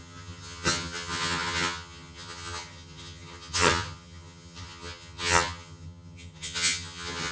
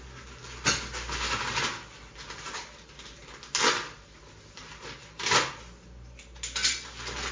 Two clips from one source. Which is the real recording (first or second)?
second